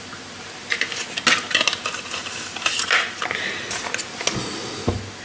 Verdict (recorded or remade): recorded